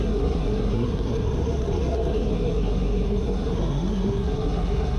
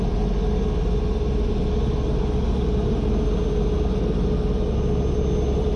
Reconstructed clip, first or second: first